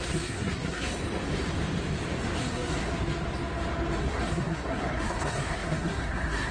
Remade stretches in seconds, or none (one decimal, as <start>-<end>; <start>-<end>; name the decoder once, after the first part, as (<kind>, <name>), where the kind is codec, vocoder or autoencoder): 0.0-0.9 (codec, SNAC); 2.4-2.9; 4.0-6.5